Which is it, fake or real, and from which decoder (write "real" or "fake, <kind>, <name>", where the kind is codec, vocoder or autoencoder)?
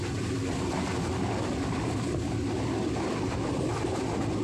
real